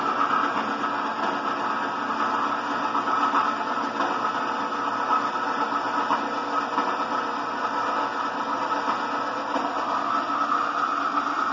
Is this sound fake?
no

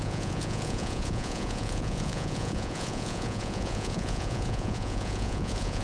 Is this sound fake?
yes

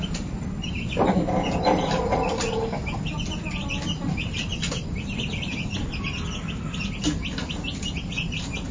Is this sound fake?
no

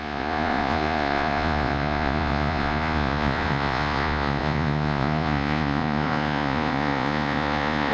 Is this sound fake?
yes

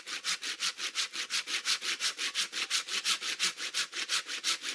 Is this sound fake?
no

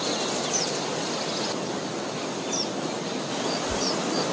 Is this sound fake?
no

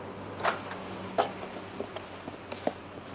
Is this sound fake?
no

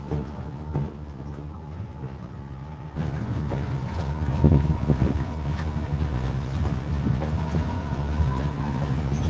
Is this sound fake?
yes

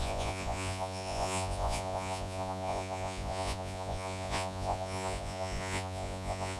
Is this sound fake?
yes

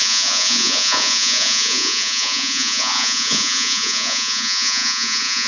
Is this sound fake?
yes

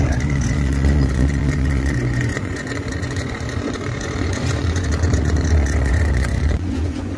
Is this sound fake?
yes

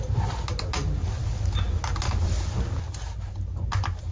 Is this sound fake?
no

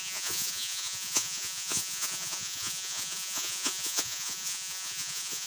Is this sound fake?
yes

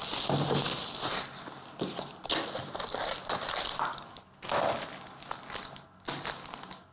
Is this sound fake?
no